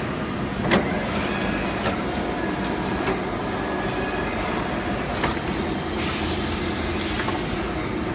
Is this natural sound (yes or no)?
yes